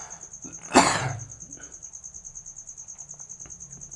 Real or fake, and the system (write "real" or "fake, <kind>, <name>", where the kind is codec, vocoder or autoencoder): real